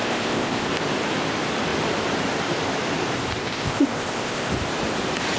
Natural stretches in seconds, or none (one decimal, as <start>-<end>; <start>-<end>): 0.7-3.4; 4.5-5.4